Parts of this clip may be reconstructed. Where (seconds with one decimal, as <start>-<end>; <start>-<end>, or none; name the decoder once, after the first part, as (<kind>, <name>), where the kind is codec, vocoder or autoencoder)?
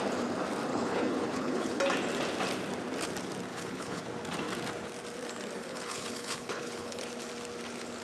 0.7-1.8 (codec, HILCodec); 3.5-4.0; 5.6-7.0